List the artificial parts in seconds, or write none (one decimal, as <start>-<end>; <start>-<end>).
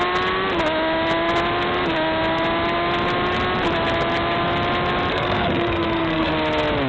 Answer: 5.1-6.3